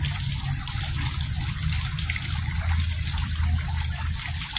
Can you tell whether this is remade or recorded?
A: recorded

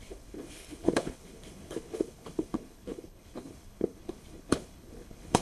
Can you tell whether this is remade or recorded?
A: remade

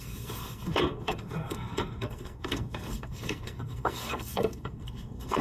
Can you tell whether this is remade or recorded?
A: remade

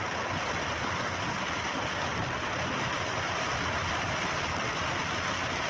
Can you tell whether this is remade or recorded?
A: remade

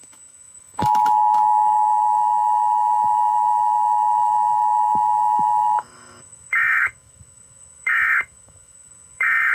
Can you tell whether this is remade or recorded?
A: remade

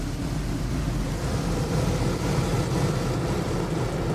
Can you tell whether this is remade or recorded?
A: recorded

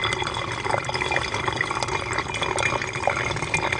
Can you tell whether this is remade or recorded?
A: recorded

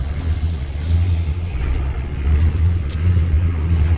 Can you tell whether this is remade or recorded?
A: remade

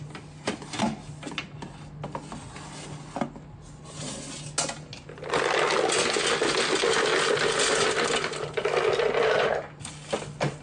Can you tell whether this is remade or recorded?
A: recorded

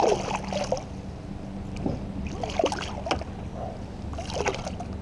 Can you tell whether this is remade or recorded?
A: recorded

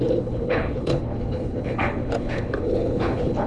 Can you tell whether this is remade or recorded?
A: remade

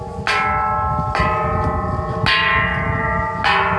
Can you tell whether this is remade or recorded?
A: recorded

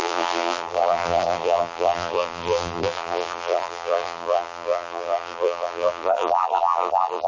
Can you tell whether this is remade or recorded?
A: remade